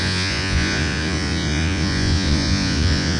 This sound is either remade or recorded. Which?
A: remade